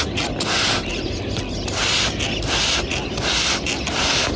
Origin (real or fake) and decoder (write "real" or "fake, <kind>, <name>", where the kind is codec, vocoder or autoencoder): real